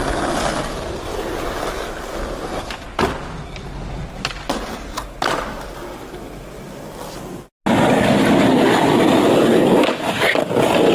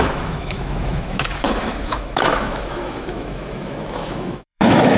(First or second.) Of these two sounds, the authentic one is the first